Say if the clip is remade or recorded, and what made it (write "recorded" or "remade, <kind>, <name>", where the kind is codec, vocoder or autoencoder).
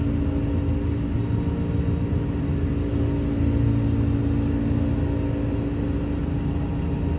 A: recorded